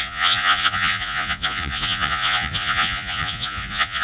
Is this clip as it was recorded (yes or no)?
no